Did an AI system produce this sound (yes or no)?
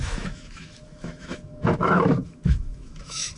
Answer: yes